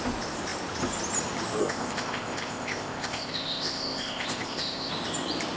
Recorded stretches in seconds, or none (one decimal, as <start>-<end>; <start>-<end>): 0.0-1.6; 4.9-5.6